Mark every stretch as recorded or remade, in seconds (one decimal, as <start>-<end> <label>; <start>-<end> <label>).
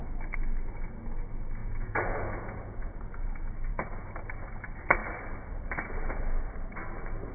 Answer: 0.0-1.6 recorded; 1.6-3.2 remade; 3.2-7.3 recorded